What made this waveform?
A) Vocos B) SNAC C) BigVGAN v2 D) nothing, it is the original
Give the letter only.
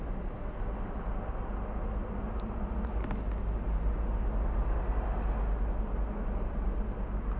D